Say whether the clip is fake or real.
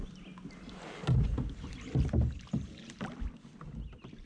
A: real